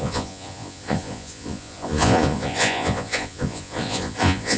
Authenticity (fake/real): fake